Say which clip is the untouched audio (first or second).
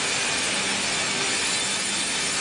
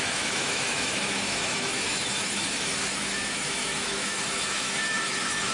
first